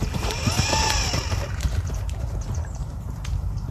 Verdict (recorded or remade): remade